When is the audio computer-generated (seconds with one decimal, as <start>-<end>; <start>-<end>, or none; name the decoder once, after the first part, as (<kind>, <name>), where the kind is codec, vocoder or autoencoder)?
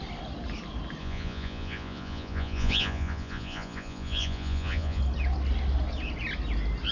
1.0-5.0 (vocoder, Vocos)